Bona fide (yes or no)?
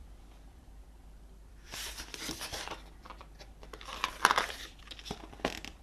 no